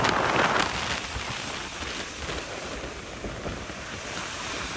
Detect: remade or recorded recorded